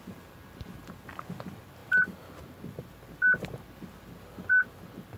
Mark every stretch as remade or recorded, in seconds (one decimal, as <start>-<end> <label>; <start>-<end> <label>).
0.0-5.2 recorded